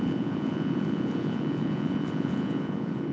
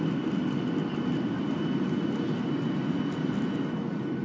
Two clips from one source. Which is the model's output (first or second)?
first